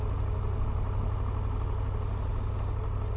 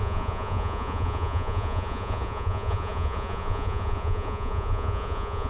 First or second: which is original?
first